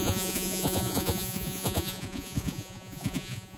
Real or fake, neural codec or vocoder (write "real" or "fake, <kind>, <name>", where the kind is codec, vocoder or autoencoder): fake, vocoder, Vocos